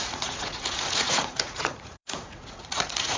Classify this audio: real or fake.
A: fake